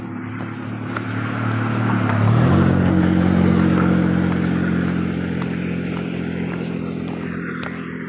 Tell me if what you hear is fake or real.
real